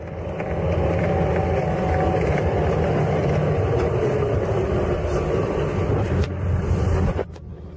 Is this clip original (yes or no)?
yes